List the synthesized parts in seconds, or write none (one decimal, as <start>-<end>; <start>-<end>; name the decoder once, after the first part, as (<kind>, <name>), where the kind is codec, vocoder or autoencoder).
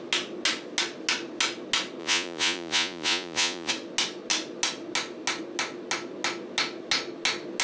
2.0-3.7 (vocoder, Vocos)